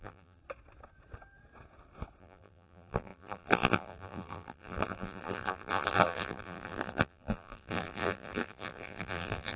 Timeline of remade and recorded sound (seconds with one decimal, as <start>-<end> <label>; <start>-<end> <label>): 0.0-0.4 remade; 0.4-2.2 recorded; 2.2-9.6 remade